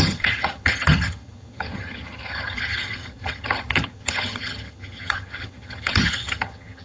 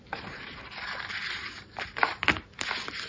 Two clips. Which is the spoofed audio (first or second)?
first